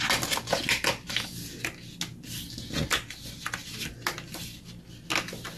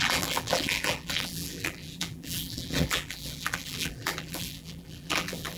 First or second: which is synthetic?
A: second